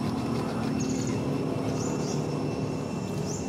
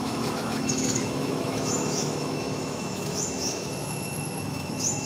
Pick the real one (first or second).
first